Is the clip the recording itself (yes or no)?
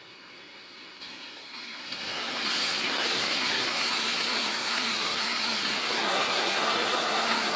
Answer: no